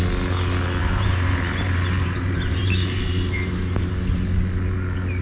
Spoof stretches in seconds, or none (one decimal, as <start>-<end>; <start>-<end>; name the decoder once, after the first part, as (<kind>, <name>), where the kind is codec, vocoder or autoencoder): 0.8-3.9 (vocoder, BigVGAN v2)